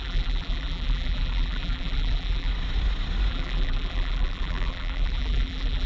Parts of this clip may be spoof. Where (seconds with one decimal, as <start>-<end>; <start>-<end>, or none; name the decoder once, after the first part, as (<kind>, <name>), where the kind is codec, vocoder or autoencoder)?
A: 0.0-2.5 (vocoder, BigVGAN v2); 3.3-5.9

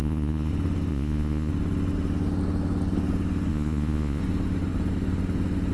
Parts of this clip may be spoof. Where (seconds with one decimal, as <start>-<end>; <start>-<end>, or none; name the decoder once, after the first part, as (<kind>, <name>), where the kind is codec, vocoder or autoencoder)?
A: 0.0-0.5 (vocoder, Vocos); 0.9-1.5; 3.5-4.2

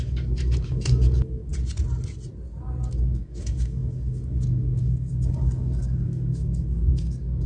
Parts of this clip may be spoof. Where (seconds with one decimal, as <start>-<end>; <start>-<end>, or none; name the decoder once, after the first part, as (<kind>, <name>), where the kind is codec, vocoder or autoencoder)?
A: 0.0-1.5 (codec, DAC); 2.9-7.5

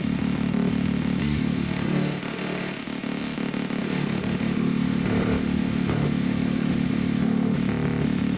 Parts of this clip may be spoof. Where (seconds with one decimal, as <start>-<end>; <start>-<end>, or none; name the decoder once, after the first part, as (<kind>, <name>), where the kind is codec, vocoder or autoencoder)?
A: 1.2-2.8 (autoencoder, DAC-VAE); 3.8-7.6

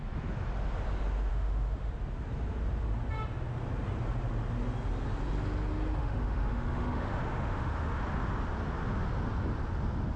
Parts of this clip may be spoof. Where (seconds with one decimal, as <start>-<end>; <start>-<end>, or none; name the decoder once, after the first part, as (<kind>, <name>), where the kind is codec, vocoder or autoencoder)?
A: 1.3-1.9 (autoencoder, DAC-VAE); 6.0-8.0

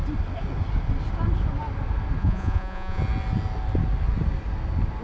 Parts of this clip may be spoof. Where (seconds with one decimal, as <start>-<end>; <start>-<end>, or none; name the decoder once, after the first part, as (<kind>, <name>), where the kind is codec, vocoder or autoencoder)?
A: 2.2-3.0 (vocoder, Vocos)

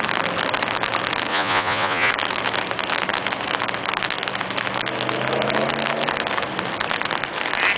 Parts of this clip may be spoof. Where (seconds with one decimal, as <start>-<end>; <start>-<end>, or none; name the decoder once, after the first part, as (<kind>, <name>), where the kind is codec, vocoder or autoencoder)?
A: 1.3-2.1 (vocoder, Vocos)